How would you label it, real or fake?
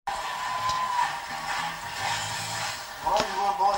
real